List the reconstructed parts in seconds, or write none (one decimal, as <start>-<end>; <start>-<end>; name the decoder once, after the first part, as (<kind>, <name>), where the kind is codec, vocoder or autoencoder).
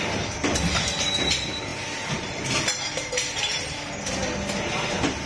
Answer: none